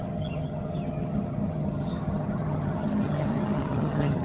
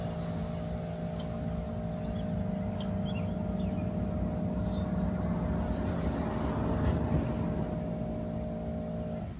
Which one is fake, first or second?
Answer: first